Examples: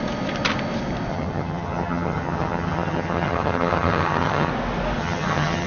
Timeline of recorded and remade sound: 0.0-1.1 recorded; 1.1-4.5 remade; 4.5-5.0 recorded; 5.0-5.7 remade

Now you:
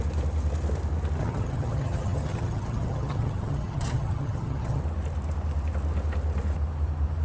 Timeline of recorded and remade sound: 0.0-1.2 recorded; 1.2-4.8 remade; 4.8-7.2 recorded

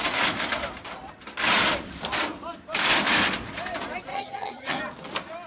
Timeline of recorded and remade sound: 0.0-4.1 recorded; 4.1-4.8 remade; 4.8-5.5 recorded

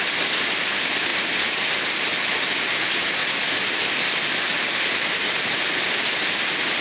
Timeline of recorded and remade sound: 0.0-6.8 recorded

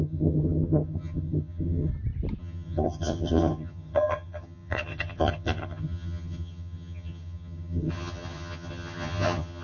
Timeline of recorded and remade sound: 0.0-1.9 remade; 1.9-2.4 recorded; 2.4-9.6 remade